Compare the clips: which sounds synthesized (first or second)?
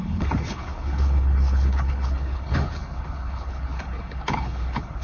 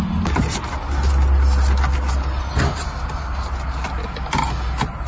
first